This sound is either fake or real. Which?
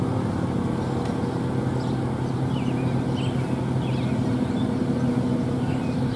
real